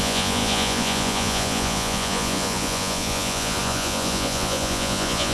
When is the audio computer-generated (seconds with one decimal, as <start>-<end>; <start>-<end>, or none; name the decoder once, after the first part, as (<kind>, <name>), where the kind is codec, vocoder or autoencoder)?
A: 0.0-5.3 (vocoder, Vocos)